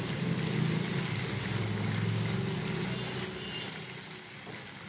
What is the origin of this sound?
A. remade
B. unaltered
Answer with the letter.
B